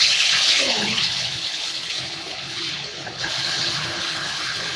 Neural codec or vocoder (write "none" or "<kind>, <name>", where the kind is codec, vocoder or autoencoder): codec, HILCodec